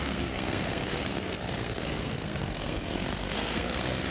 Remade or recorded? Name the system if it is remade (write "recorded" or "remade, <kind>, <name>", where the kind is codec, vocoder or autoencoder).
remade, codec, SNAC